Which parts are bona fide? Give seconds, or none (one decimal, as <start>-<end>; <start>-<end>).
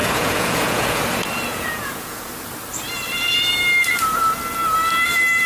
1.0-1.5; 2.3-5.5